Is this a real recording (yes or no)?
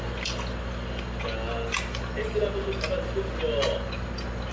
yes